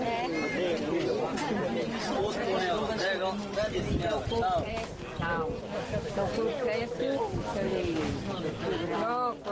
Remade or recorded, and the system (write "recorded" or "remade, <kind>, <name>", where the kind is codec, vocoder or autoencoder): recorded